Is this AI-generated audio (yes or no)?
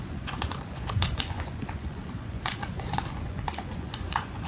yes